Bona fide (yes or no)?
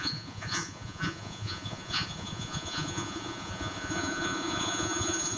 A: no